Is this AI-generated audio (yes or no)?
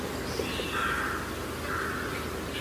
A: no